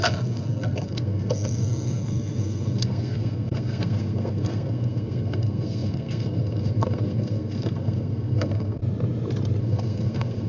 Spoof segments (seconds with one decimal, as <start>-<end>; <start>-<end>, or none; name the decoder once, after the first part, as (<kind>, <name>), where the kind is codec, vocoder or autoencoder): 0.0-8.8 (codec, SNAC); 9.6-10.5